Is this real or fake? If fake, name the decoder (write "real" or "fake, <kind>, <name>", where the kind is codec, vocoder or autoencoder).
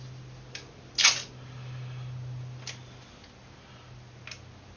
real